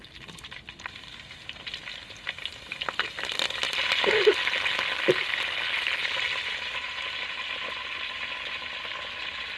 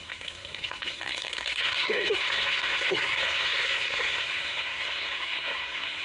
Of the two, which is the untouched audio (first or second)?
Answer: first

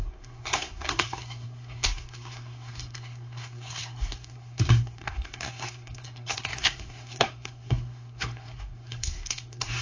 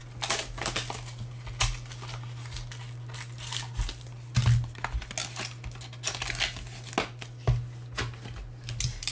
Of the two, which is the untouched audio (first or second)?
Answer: second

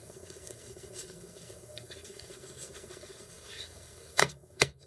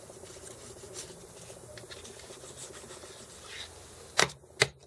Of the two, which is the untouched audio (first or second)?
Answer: second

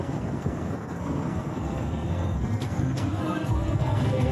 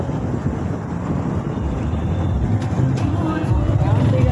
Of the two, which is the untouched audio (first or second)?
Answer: second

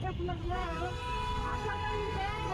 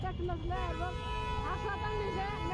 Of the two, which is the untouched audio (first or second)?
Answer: second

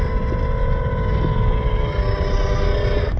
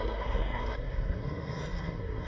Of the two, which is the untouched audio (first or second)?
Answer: first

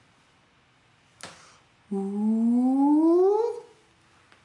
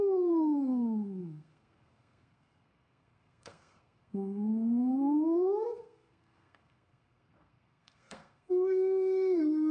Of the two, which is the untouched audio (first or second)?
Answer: first